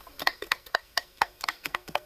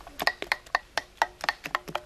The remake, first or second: first